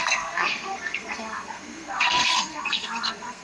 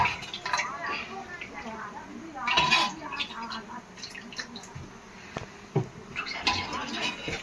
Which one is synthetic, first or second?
first